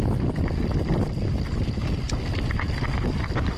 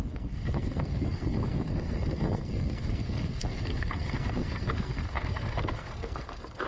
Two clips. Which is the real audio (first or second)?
first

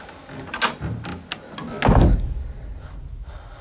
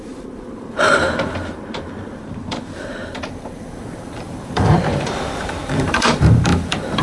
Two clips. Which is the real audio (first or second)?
first